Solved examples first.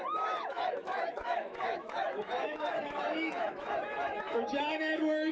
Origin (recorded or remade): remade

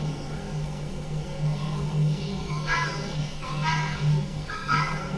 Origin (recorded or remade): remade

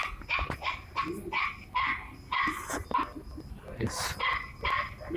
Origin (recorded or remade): recorded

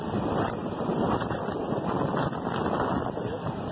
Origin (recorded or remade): recorded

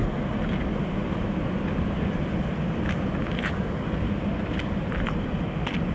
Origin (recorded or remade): recorded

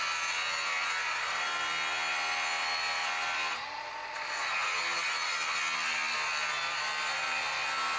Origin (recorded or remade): recorded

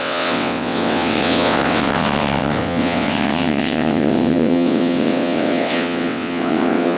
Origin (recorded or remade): remade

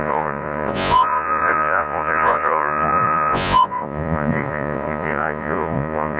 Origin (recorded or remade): remade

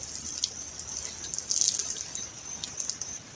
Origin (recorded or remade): recorded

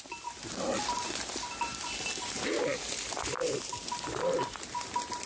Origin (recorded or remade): recorded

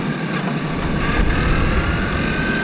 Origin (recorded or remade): recorded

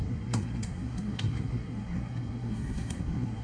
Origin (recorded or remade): remade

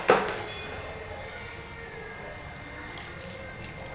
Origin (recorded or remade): recorded